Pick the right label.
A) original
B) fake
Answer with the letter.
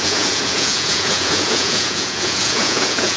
B